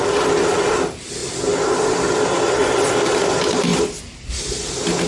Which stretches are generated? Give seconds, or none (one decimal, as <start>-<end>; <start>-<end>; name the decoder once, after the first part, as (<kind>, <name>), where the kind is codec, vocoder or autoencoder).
none